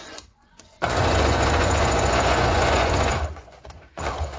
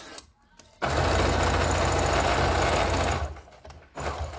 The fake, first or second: first